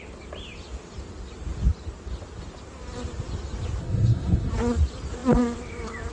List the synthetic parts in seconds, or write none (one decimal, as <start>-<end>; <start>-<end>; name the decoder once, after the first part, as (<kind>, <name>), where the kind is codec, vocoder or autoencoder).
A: 3.8-4.5 (codec, SNAC)